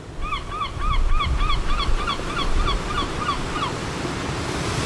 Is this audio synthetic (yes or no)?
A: no